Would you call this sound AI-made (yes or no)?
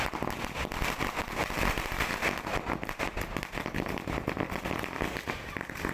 no